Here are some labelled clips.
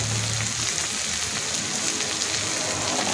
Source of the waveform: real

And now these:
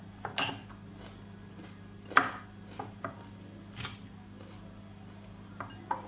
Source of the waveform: real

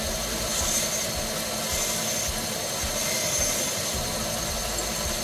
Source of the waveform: real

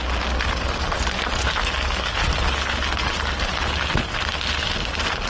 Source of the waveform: real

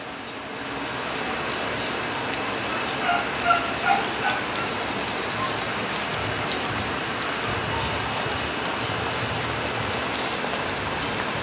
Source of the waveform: real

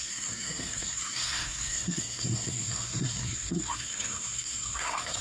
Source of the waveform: fake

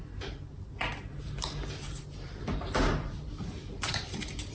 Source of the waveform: real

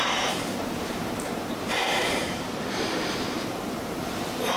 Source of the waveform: fake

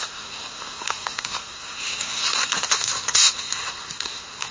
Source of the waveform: fake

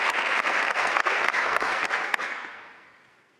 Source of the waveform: fake